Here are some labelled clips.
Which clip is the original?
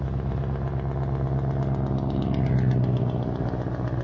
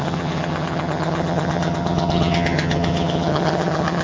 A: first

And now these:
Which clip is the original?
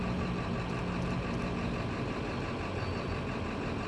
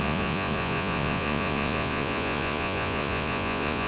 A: first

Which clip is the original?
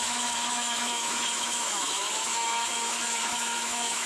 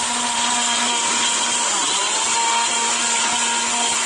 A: second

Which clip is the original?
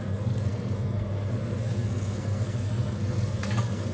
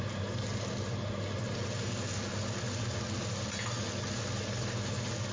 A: second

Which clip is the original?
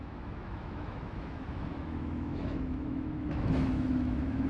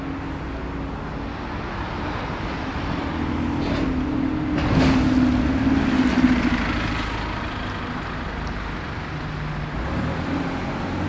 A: second